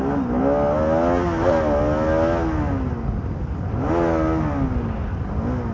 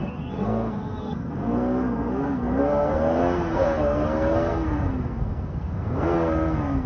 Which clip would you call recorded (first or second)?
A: first